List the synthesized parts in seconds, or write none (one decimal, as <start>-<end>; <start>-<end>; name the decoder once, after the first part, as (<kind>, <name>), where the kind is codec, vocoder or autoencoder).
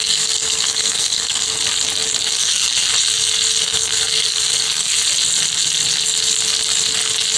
0.0-1.6 (codec, SNAC); 2.2-2.9; 3.6-5.0